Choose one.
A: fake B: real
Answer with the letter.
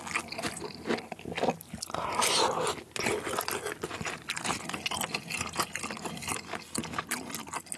B